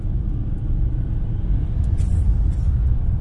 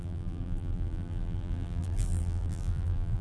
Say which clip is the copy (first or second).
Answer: second